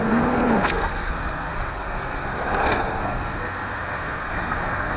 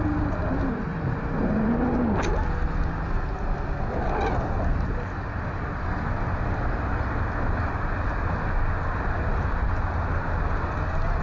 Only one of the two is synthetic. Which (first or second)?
first